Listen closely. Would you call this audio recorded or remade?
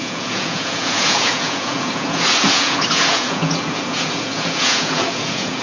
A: remade